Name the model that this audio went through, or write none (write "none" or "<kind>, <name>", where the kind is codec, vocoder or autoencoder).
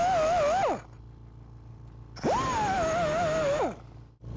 none